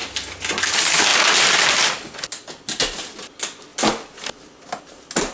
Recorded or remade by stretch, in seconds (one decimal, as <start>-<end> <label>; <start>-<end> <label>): 0.0-5.3 recorded